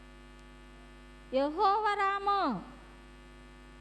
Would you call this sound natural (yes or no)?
yes